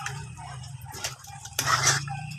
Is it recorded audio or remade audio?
remade